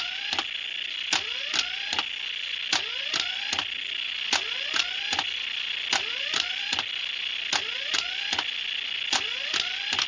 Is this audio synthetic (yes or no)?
no